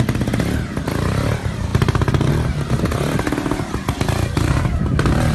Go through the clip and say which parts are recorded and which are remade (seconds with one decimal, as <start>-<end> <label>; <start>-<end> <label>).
0.0-5.3 recorded

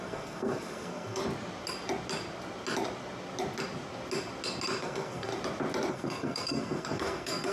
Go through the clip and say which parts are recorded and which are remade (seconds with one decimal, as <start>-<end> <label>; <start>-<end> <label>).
0.0-1.2 remade; 1.2-4.8 recorded; 4.8-5.3 remade; 5.3-5.9 recorded; 5.9-7.5 remade

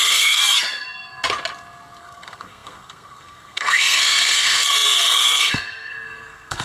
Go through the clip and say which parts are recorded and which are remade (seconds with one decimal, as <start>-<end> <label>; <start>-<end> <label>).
0.0-0.4 remade; 0.4-2.0 recorded; 2.0-6.6 remade